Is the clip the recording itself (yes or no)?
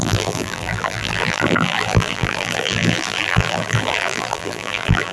no